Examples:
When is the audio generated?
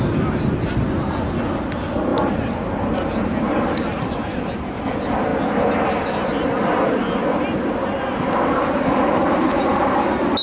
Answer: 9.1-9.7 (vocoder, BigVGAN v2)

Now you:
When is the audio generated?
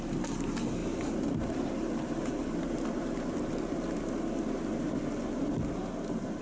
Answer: 0.8-4.0 (vocoder, BigVGAN v2)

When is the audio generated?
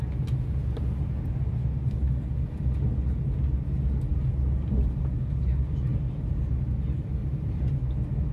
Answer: 7.2-7.7 (vocoder, BigVGAN v2)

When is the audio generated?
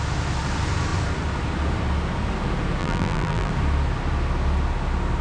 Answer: 2.8-3.5 (vocoder, BigVGAN v2)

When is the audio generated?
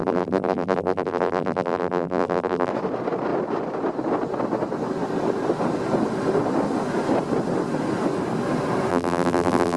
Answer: 0.0-2.7 (vocoder, BigVGAN v2); 8.9-9.8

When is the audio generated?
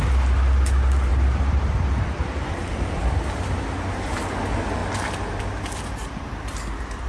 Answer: 1.1-2.9 (vocoder, BigVGAN v2); 4.8-5.4; 6.0-7.1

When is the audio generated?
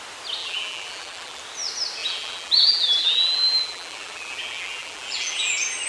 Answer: 0.4-1.4 (vocoder, BigVGAN v2); 2.0-5.5